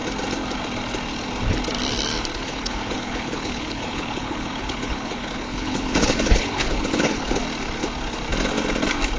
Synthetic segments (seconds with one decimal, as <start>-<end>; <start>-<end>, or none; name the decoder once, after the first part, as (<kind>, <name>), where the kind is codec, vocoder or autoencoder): 2.3-7.4 (codec, HILCodec)